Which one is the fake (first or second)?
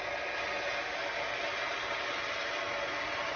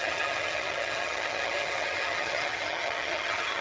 second